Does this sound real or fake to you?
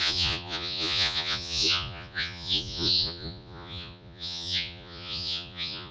fake